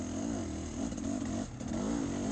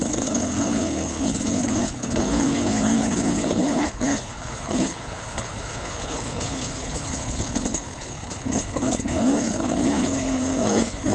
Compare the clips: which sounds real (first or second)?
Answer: first